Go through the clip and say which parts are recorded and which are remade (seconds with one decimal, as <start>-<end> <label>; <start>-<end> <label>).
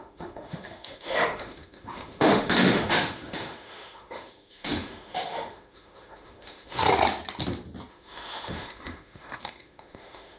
0.0-6.8 remade; 6.8-7.9 recorded; 7.9-10.4 remade